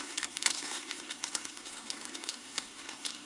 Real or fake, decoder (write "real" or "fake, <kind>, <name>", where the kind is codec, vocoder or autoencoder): fake, codec, SNAC